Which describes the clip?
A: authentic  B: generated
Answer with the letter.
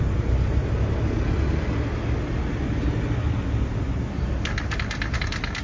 A